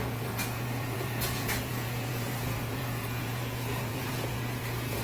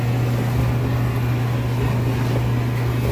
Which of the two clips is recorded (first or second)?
second